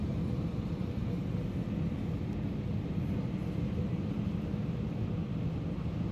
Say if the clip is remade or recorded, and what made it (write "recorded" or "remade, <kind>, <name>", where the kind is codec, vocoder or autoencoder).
recorded